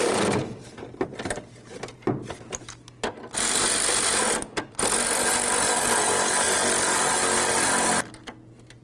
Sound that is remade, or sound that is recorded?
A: recorded